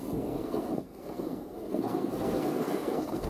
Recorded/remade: remade